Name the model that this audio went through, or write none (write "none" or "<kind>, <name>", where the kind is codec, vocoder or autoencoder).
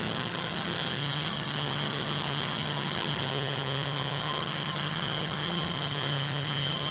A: vocoder, HiFi-GAN